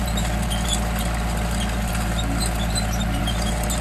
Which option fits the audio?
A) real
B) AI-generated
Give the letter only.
A